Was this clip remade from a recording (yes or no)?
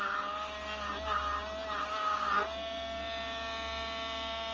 no